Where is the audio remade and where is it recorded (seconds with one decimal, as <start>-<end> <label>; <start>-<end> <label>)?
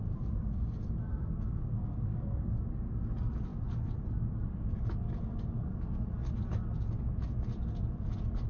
0.0-1.1 recorded; 1.1-2.5 remade; 2.5-8.5 recorded